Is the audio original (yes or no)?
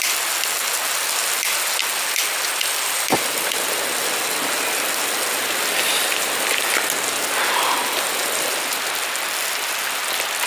yes